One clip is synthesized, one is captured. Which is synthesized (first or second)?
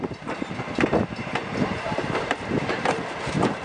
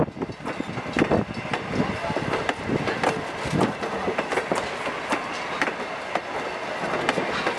first